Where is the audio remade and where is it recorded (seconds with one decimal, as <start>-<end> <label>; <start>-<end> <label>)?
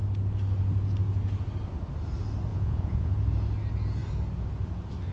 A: 0.0-2.5 recorded; 2.5-3.1 remade; 3.1-5.1 recorded